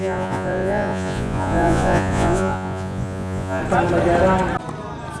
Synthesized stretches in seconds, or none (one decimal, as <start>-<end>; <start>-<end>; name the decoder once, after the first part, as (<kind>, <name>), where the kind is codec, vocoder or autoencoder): 0.0-3.6 (vocoder, Vocos)